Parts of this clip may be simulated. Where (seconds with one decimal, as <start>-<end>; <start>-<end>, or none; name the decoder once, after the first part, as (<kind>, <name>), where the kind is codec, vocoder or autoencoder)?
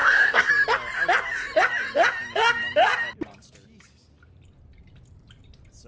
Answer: 0.0-0.5 (codec, SNAC)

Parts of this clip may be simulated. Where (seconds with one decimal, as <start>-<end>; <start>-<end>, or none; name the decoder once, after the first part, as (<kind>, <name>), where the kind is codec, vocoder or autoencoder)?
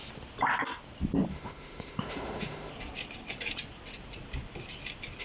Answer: 1.3-2.7 (autoencoder, DAC-VAE)